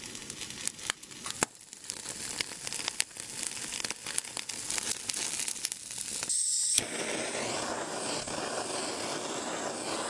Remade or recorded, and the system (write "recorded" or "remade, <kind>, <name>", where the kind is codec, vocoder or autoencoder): recorded